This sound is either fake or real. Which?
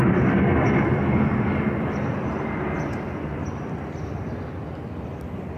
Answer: fake